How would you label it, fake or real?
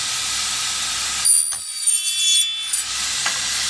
real